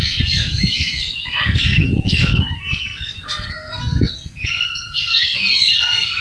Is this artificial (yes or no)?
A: yes